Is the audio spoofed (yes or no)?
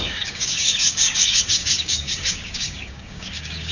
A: yes